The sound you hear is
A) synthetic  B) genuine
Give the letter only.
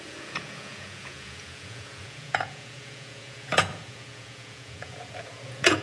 A